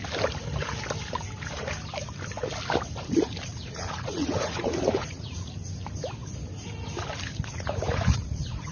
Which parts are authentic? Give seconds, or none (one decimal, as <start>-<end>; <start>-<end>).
0.0-3.5; 5.5-7.5